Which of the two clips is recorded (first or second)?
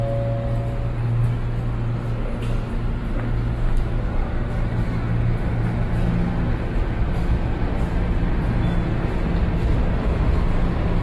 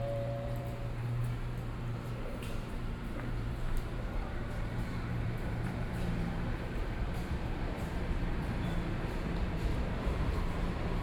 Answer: first